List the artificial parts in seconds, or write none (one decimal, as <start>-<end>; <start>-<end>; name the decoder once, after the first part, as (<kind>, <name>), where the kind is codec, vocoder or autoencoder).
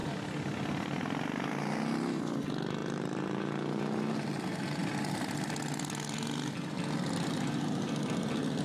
none